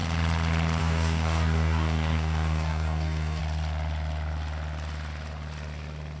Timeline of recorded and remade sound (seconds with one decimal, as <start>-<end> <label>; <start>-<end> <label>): 0.0-0.8 recorded; 0.8-3.4 remade; 3.4-6.2 recorded